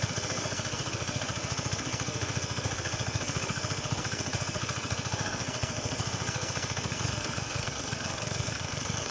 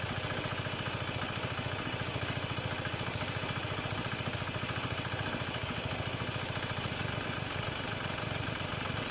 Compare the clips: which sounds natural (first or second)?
second